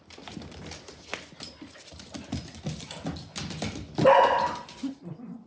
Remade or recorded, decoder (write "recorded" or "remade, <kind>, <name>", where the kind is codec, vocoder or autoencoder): recorded